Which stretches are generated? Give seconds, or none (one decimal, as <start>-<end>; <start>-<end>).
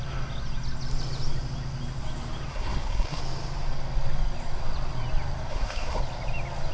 2.5-3.2; 5.5-6.0